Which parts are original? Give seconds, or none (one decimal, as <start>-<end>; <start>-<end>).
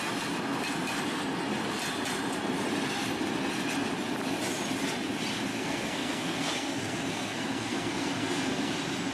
0.0-5.5; 8.7-9.1